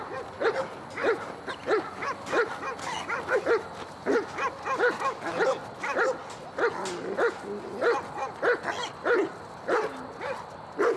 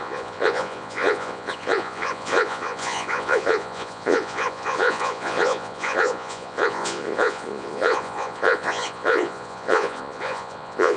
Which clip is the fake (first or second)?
second